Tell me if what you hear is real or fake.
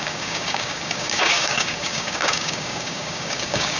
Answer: fake